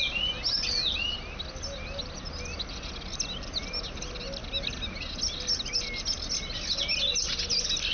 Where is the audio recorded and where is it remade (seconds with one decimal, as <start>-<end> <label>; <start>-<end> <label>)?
0.0-7.9 recorded